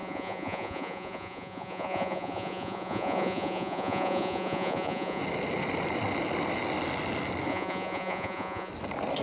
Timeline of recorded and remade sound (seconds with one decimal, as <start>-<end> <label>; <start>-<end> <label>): 0.0-5.2 remade; 5.2-7.5 recorded; 7.5-8.7 remade; 8.7-9.2 recorded